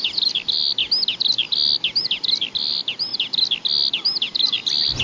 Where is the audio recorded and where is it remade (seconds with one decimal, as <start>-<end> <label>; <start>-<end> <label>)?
0.0-0.8 remade; 0.8-2.0 recorded; 2.0-3.1 remade; 3.1-3.9 recorded; 3.9-4.3 remade; 4.3-5.0 recorded